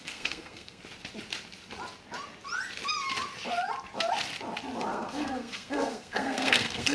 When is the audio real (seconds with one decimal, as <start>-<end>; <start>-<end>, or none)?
0.8-4.9